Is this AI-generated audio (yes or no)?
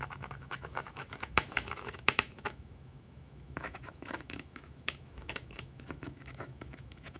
yes